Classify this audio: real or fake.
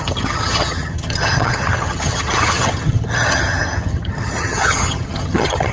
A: fake